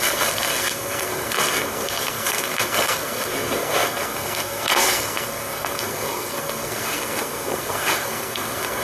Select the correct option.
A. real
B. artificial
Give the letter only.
B